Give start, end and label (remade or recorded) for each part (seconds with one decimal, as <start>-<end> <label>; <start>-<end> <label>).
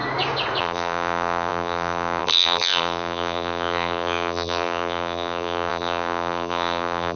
0.0-0.6 recorded; 0.6-7.2 remade